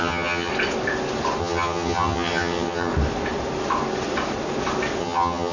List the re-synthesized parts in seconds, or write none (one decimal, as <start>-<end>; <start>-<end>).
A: 0.0-0.5; 1.4-2.9; 5.0-5.5